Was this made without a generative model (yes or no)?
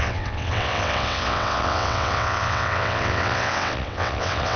no